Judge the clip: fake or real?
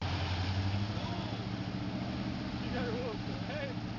real